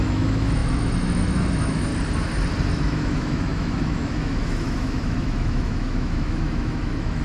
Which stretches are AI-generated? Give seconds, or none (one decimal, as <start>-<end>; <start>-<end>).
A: 0.0-1.9; 2.7-7.2